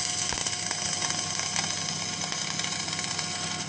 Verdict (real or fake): real